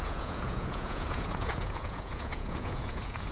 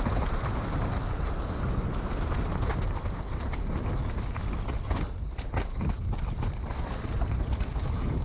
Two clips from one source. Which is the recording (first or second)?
second